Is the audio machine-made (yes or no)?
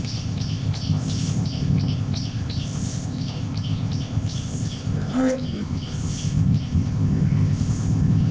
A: yes